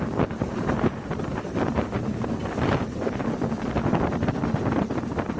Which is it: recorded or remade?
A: remade